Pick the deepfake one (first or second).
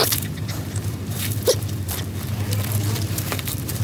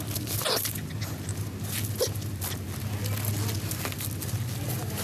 first